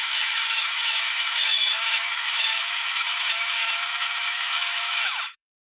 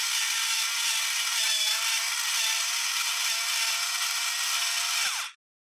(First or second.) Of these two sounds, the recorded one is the second